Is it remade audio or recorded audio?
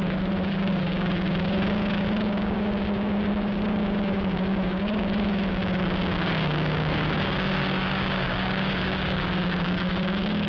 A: remade